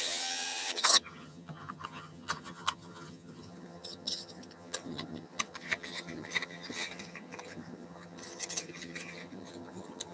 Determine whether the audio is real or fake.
fake